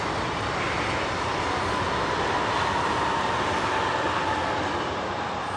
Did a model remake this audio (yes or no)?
no